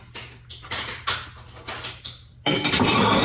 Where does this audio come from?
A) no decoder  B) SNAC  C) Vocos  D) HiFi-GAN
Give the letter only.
A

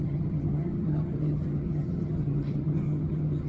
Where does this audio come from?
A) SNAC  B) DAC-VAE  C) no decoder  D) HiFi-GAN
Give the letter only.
D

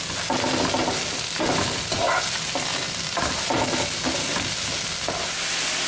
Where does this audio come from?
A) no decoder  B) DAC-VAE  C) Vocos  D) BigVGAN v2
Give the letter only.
A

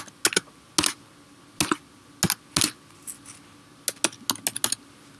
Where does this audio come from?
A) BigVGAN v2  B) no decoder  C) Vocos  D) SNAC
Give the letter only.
B